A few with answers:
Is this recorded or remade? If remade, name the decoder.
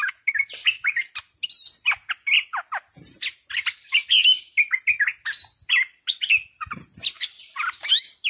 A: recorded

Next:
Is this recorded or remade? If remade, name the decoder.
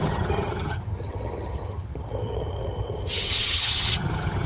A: remade, vocoder, HiFi-GAN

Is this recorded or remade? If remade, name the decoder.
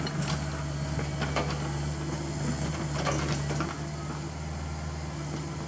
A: recorded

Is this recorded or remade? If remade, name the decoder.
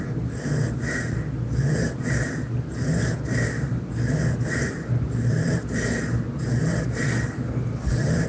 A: recorded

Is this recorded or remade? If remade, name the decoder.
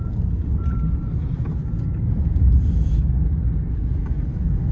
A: recorded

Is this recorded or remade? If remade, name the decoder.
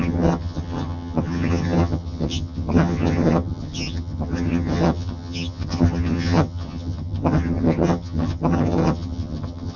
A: remade, vocoder, HiFi-GAN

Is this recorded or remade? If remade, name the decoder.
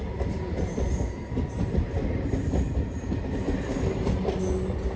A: recorded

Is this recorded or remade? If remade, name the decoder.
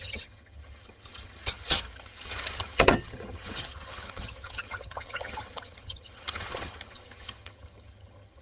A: remade, vocoder, HiFi-GAN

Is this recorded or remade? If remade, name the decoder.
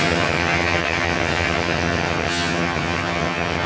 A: remade, vocoder, HiFi-GAN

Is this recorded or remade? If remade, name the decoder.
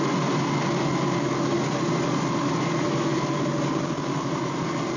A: recorded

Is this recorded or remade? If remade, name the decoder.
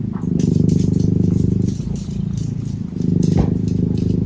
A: recorded